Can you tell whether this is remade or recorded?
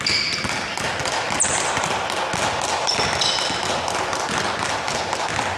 recorded